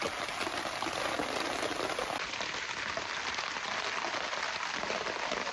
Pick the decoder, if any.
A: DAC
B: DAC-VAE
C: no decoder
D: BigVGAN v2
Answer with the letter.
C